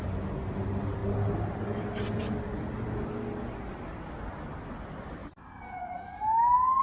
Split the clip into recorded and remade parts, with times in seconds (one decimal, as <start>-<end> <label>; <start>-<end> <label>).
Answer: 0.0-6.8 recorded